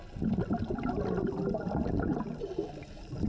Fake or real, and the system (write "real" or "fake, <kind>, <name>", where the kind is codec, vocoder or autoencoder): real